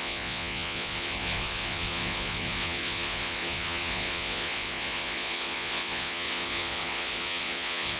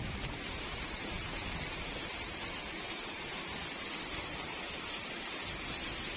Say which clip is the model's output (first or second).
first